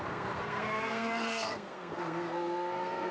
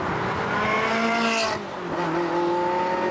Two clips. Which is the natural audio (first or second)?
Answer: second